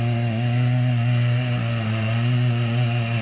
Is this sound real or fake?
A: real